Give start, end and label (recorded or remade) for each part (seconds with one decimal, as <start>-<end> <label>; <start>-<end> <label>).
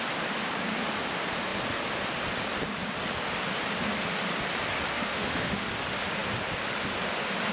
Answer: 0.0-4.9 recorded; 4.9-5.7 remade; 5.7-7.5 recorded